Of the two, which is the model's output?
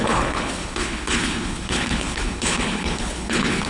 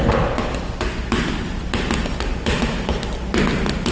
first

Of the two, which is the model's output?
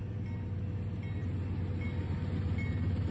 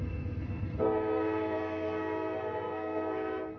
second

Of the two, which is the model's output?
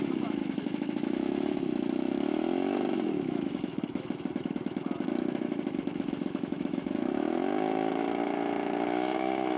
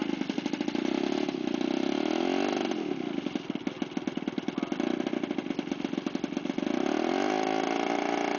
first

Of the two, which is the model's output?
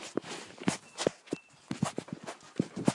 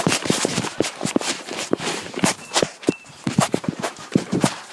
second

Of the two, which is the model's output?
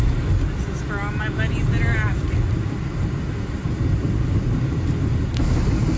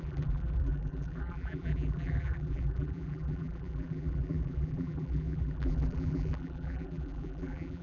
second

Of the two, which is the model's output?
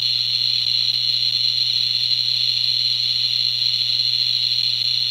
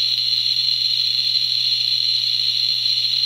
second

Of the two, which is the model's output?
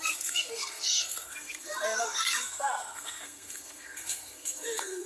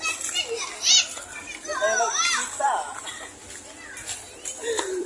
first